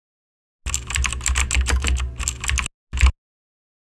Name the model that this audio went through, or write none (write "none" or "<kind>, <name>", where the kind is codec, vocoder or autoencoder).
none